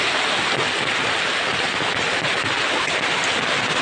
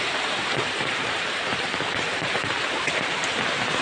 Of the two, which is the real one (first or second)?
first